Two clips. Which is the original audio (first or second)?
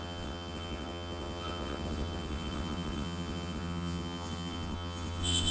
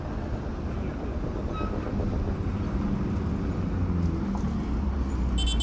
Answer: second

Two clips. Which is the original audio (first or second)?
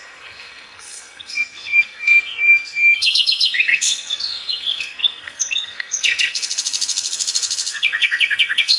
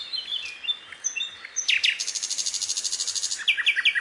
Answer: second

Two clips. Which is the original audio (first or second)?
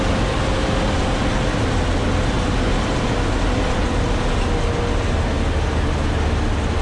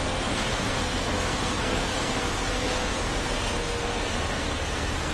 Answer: first